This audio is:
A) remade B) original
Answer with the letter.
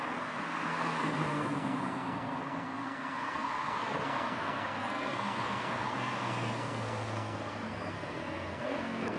A